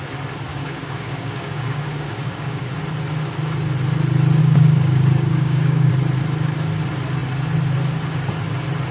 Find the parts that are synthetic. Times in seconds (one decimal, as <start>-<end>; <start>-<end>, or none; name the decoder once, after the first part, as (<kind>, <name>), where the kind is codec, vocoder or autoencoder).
0.5-2.8 (codec, DAC); 4.4-5.9